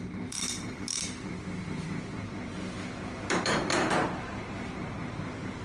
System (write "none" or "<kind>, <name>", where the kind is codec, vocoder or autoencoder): vocoder, BigVGAN v2